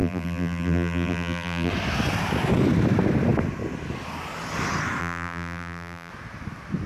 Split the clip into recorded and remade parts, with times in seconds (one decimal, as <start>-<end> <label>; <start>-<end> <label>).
0.0-1.7 remade; 1.7-5.0 recorded; 5.0-6.1 remade; 6.1-6.9 recorded